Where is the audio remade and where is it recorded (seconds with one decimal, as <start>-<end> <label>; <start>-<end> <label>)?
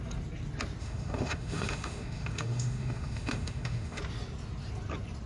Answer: 0.0-0.8 recorded; 0.8-4.0 remade; 4.0-5.3 recorded